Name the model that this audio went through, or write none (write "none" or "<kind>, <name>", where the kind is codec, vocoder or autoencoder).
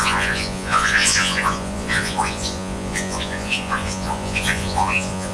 vocoder, Vocos